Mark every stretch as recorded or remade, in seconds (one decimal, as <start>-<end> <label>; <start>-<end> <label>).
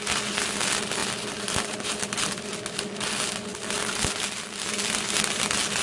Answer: 0.0-5.8 recorded